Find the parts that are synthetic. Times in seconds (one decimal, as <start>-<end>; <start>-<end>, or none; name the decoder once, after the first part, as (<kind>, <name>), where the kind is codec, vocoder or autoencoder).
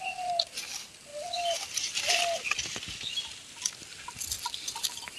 none